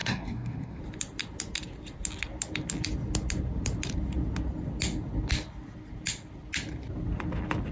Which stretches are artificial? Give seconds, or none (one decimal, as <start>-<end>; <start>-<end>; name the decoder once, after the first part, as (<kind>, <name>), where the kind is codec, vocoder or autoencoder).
0.0-0.8 (codec, SNAC)